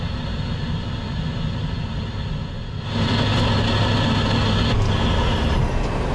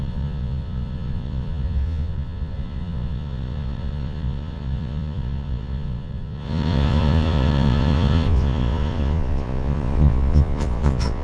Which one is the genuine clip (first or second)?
first